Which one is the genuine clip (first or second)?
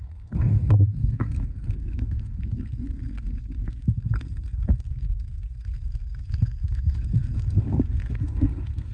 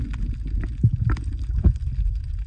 second